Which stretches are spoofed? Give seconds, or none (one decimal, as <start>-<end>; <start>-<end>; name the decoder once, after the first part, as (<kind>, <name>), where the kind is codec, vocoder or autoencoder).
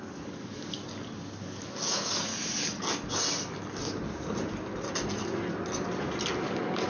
0.0-0.8 (codec, DAC); 1.4-2.3; 6.4-6.9